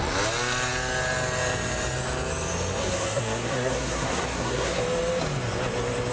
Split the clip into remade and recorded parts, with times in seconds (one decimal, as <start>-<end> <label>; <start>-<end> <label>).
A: 0.0-2.8 recorded; 2.8-4.8 remade; 4.8-6.1 recorded